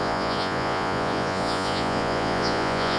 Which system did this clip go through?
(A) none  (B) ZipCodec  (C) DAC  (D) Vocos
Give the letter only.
D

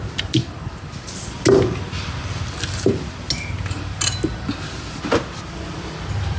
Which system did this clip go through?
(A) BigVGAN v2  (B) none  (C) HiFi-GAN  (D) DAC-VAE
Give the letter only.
B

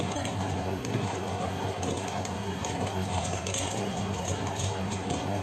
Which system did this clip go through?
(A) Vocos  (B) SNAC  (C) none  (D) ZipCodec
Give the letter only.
B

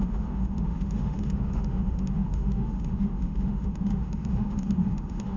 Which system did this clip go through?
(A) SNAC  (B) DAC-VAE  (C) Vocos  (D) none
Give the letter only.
B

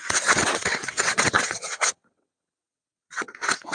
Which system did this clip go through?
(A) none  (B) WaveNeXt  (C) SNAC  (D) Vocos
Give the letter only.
B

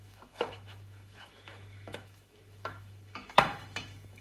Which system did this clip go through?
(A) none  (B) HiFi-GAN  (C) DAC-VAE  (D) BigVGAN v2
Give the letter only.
C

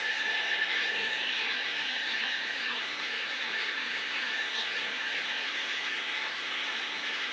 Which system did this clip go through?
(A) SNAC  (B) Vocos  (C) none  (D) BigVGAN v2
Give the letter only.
A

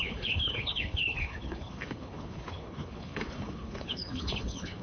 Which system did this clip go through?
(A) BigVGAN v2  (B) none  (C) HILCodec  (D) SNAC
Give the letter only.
C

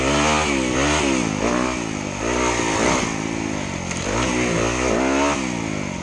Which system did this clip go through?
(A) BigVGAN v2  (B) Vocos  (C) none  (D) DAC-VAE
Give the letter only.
C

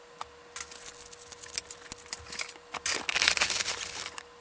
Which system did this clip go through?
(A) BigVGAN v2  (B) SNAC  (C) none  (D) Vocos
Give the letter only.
C